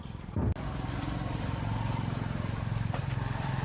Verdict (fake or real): fake